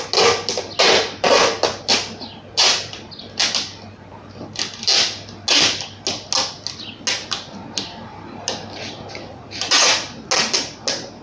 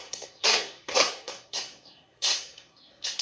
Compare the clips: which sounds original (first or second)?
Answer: first